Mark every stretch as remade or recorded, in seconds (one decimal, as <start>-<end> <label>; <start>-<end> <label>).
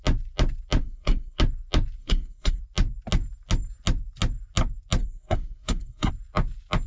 0.0-0.8 recorded; 0.8-1.4 remade; 1.4-2.0 recorded; 2.0-2.6 remade; 2.6-5.0 recorded; 5.0-6.1 remade; 6.1-6.9 recorded